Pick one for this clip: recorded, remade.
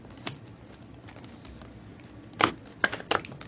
recorded